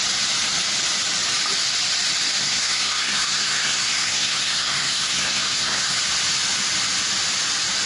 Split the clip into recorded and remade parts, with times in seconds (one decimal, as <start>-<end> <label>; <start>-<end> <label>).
0.0-2.4 recorded; 2.4-6.0 remade; 6.0-7.9 recorded